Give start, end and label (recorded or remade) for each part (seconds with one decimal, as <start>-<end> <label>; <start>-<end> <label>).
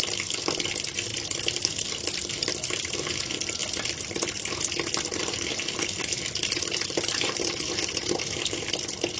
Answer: 0.0-2.5 recorded; 2.5-3.1 remade; 3.1-5.1 recorded; 5.1-8.6 remade; 8.6-9.2 recorded